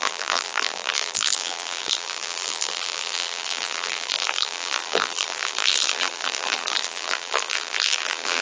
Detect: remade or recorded remade